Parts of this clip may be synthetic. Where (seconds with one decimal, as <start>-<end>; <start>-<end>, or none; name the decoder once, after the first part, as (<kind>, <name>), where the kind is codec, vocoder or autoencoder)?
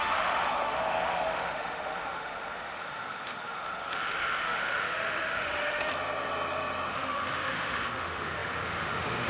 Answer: 0.0-5.9 (autoencoder, DAC-VAE); 6.9-9.3